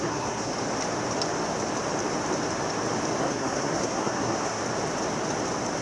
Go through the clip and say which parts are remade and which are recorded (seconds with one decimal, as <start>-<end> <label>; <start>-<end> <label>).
0.0-0.5 remade; 0.5-3.2 recorded; 3.2-4.6 remade; 4.6-5.8 recorded